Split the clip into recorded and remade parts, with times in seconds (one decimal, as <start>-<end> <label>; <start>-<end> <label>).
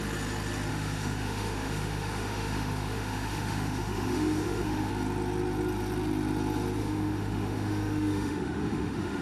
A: 0.0-0.7 recorded; 0.7-4.9 remade; 4.9-6.8 recorded; 6.8-9.2 remade